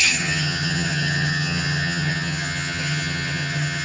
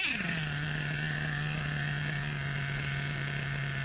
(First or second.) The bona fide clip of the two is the second